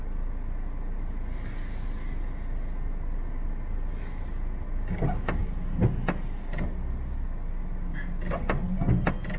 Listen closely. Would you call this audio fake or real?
real